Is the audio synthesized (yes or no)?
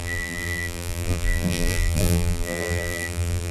yes